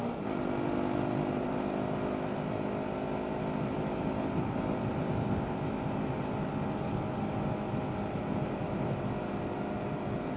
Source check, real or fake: real